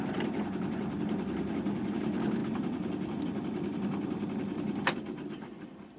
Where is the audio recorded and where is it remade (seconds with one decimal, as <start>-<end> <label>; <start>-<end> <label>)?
0.0-6.0 recorded